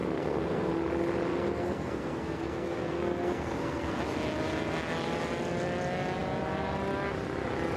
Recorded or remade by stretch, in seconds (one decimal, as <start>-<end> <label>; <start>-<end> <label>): 0.0-0.7 remade; 0.7-1.3 recorded; 1.3-4.0 remade; 4.0-7.8 recorded